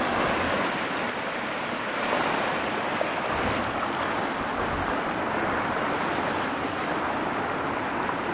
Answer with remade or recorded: recorded